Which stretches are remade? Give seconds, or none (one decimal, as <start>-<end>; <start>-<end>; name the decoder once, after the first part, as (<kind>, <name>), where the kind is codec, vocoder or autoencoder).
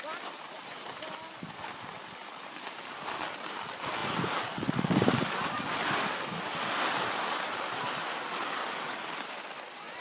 none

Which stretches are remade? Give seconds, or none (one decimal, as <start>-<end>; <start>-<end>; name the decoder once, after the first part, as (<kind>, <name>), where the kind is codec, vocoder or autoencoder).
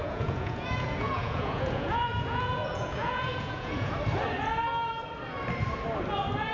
0.0-3.9 (vocoder, Vocos)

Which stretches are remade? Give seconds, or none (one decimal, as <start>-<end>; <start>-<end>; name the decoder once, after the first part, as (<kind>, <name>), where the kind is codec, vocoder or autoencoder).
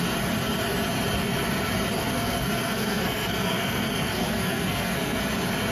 2.0-5.2 (codec, SNAC)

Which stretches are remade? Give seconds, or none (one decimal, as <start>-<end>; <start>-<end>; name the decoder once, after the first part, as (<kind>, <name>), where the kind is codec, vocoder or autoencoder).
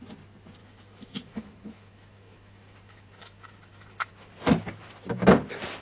0.6-4.1 (autoencoder, DAC-VAE)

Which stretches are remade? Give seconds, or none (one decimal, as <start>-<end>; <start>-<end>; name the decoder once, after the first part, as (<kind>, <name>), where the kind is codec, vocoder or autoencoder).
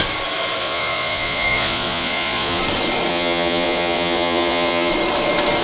0.6-2.6 (vocoder, Vocos); 3.1-4.9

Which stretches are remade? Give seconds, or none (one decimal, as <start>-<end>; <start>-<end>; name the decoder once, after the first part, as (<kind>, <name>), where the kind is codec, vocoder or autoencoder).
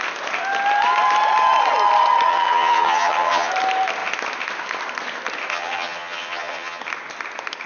2.3-3.5 (vocoder, HiFi-GAN); 5.5-6.8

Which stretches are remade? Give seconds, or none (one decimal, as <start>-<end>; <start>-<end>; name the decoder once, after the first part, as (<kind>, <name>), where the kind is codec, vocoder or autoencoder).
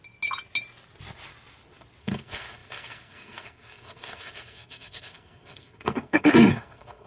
2.0-7.1 (codec, SNAC)